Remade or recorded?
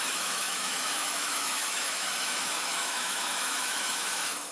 remade